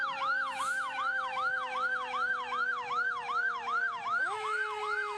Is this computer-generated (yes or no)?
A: yes